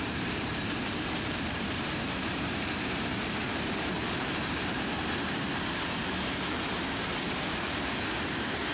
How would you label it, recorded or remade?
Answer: remade